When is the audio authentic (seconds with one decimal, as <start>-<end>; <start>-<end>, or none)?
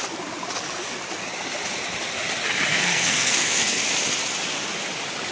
0.0-2.7; 3.8-5.3